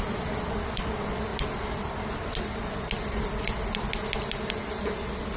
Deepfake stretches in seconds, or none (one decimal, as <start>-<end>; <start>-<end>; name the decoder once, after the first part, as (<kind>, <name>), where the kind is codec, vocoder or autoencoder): none